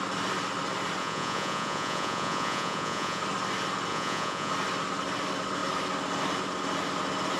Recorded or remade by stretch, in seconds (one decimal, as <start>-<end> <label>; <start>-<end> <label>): 0.0-1.0 recorded; 1.0-3.2 remade; 3.2-3.9 recorded; 3.9-4.5 remade; 4.5-7.4 recorded